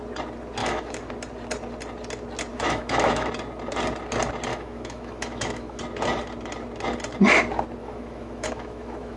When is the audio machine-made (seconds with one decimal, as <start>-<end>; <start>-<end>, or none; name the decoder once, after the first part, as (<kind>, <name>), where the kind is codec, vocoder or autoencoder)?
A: 0.6-1.1 (autoencoder, DAC-VAE); 2.5-3.3; 4.5-5.8; 7.8-9.2